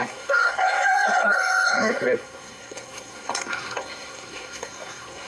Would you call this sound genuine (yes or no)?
no